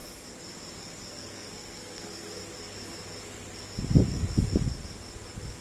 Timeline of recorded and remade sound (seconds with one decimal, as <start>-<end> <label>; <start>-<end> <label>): 0.0-1.1 recorded; 1.1-2.4 remade; 2.4-5.6 recorded